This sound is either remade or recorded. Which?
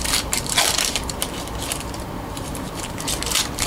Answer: remade